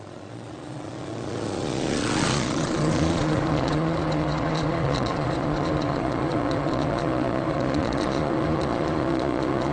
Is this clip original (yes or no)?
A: no